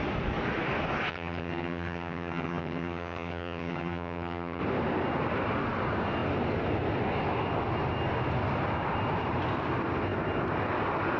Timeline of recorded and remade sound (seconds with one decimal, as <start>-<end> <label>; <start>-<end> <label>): 0.0-1.1 recorded; 1.1-4.6 remade; 4.6-11.2 recorded